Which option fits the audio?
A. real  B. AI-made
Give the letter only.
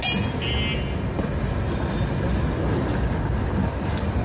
A